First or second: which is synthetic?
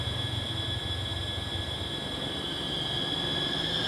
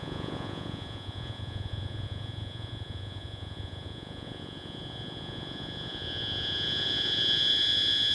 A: second